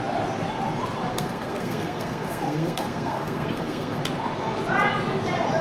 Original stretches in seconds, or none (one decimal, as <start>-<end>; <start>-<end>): 0.0-1.1; 4.0-5.6